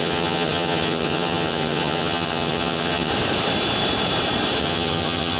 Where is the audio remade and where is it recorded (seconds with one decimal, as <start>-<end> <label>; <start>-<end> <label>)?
0.0-3.1 remade; 3.1-4.6 recorded; 4.6-5.4 remade